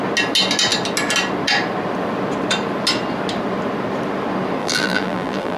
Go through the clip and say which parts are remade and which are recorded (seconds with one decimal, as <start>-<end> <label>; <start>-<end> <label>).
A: 0.0-4.6 recorded; 4.6-5.6 remade